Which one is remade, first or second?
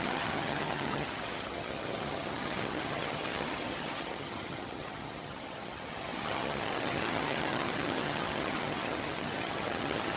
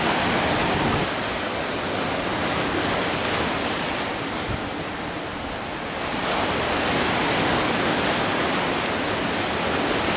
first